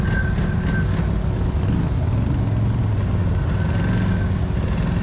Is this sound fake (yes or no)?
no